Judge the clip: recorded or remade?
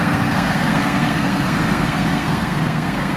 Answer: remade